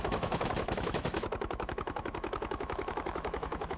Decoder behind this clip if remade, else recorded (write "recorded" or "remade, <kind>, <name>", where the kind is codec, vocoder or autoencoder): remade, autoencoder, DAC-VAE